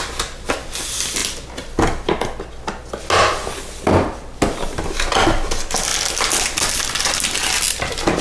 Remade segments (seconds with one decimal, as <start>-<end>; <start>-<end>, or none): none